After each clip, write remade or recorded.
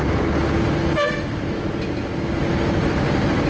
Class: recorded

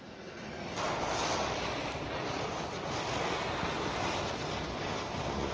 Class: recorded